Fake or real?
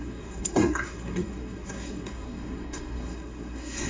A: fake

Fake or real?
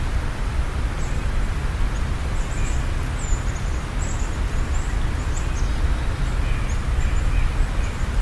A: real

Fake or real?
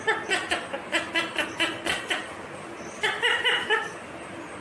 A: real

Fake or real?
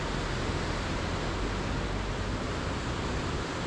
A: real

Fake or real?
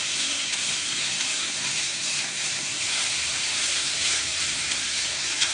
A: fake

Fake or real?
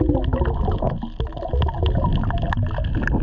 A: real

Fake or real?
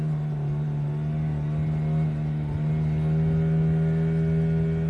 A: real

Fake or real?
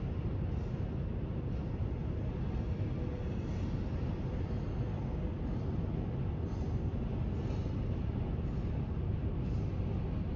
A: real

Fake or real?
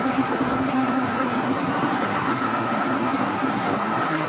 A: fake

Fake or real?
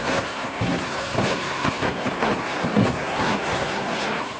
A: fake